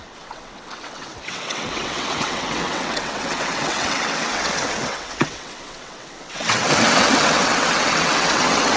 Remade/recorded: remade